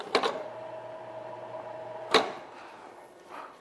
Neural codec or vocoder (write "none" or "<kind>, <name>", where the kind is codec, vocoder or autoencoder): none